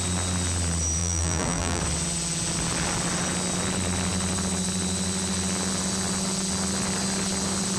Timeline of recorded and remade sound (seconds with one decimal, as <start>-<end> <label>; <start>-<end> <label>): 0.0-1.0 recorded; 1.0-1.8 remade; 1.8-7.8 recorded